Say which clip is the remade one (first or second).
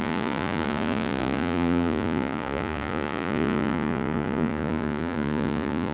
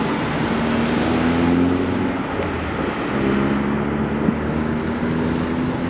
first